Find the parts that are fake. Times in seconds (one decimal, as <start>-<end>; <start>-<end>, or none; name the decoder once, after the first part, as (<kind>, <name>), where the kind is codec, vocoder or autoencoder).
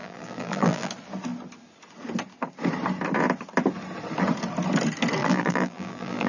0.0-0.9 (vocoder, BigVGAN v2); 5.2-6.3